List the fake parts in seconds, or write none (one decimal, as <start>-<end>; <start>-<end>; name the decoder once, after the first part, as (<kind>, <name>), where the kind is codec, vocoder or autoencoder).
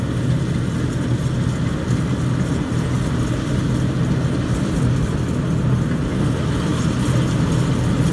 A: none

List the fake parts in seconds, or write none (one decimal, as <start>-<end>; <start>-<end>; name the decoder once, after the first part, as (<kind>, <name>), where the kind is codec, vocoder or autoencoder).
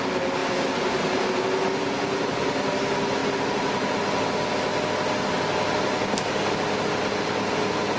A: 0.4-1.4 (vocoder, BigVGAN v2); 3.2-3.9